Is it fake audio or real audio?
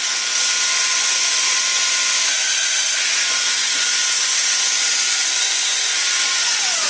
fake